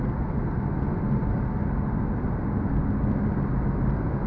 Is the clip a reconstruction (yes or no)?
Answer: no